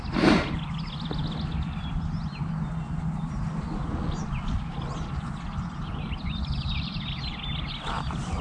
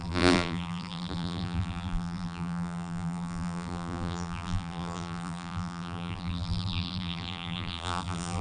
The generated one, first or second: second